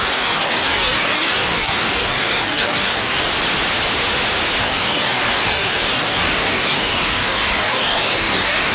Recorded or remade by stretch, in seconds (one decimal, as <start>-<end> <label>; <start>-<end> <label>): 0.0-3.3 remade; 3.3-4.6 recorded; 4.6-8.7 remade